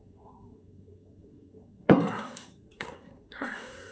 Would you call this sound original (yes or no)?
no